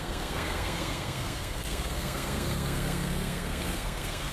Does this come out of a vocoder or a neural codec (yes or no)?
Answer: yes